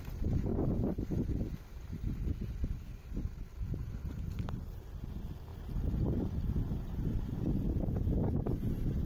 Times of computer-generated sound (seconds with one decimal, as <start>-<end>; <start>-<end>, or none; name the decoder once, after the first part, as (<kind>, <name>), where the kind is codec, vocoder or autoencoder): none